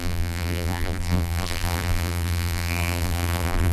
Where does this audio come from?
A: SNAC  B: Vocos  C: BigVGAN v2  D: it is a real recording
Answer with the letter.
C